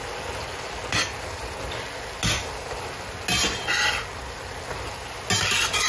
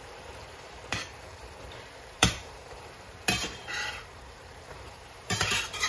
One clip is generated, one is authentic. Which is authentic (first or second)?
first